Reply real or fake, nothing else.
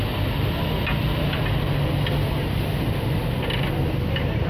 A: real